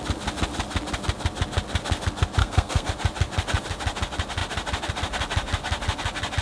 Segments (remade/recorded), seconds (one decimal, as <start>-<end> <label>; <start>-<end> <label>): 0.0-2.4 recorded; 2.4-2.9 remade; 2.9-6.4 recorded